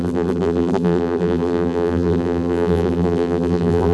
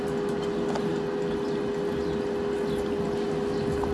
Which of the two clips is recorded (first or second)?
second